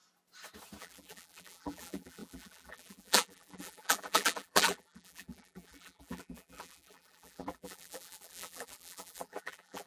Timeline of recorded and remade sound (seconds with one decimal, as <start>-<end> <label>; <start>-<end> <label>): 0.0-0.8 recorded; 0.8-9.9 remade